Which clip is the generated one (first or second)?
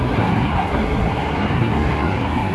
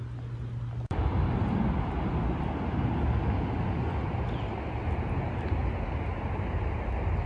first